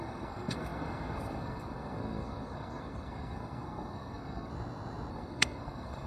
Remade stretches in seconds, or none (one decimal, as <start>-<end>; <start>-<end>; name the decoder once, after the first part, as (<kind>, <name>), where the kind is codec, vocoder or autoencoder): 0.0-4.5 (codec, SNAC); 5.1-6.1

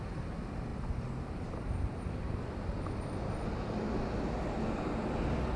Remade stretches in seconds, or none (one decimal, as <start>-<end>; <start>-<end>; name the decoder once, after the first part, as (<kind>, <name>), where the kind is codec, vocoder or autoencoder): none